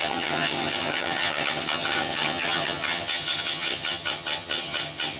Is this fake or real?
fake